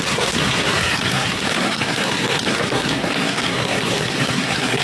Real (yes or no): no